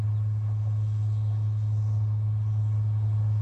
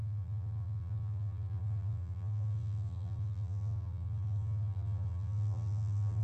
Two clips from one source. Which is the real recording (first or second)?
first